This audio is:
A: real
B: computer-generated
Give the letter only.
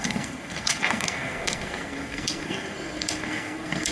B